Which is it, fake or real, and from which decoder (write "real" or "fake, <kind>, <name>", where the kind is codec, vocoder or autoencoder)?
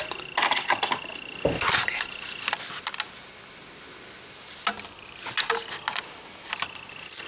real